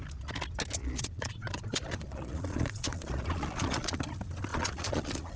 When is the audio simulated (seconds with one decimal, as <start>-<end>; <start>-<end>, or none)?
0.8-4.0; 4.5-5.4